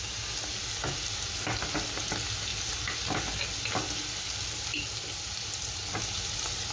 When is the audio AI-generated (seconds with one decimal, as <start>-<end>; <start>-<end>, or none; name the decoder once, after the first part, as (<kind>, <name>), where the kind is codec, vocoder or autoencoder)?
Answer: none